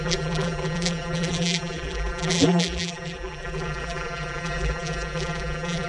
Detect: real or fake fake